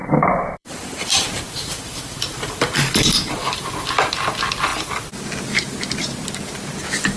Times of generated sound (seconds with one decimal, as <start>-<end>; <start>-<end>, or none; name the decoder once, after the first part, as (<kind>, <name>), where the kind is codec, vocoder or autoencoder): 0.0-3.7 (vocoder, BigVGAN v2)